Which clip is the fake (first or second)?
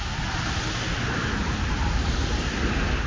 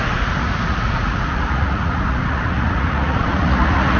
second